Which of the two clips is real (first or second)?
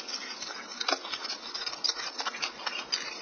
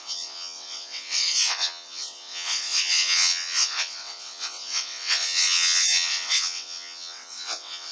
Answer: first